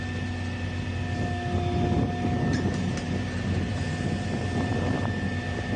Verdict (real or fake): real